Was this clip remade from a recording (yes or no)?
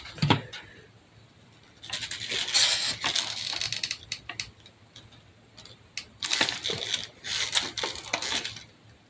no